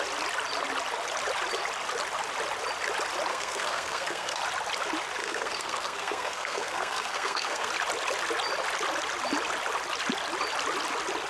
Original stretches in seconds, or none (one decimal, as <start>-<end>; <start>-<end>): 0.0-3.3; 4.4-5.2; 7.7-11.3

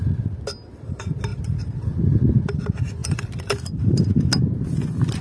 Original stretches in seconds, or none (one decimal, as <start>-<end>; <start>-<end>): 0.0-1.3; 2.6-3.0; 4.0-5.2

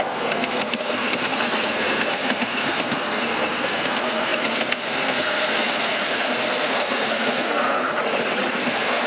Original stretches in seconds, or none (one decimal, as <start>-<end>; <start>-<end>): 7.9-8.5

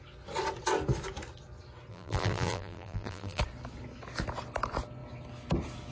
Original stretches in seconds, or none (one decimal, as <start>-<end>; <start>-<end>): 0.0-1.9; 3.4-5.9

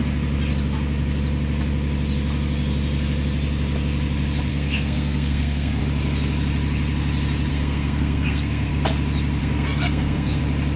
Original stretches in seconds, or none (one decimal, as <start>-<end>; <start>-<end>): 0.0-4.5; 5.8-7.5; 8.7-9.4; 10.4-10.8

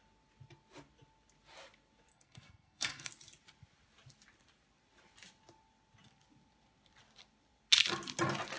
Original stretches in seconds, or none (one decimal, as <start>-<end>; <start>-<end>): 0.0-2.1; 3.1-8.6

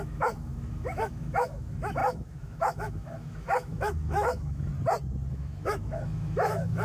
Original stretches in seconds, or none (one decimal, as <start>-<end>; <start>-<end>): 4.7-5.3